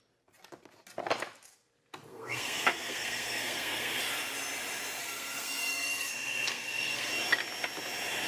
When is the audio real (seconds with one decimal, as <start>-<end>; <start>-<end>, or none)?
0.0-2.1; 4.0-5.0; 7.1-8.3